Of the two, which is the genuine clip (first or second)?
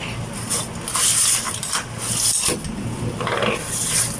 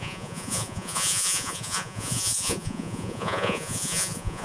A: first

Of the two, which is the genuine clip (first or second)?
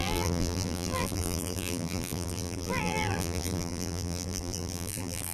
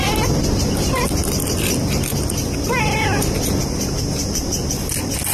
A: second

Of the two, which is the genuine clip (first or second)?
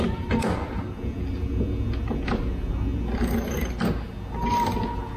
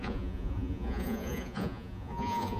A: first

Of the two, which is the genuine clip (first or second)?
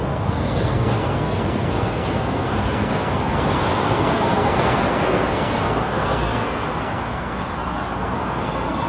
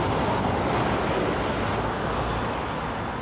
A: second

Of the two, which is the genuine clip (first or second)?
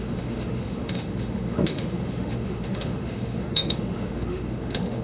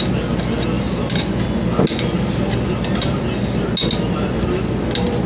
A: second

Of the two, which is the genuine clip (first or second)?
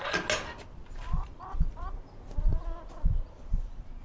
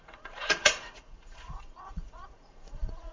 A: first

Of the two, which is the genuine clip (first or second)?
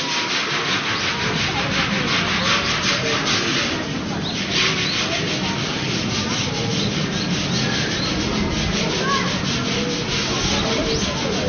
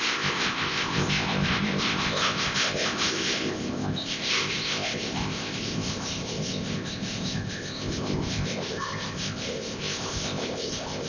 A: first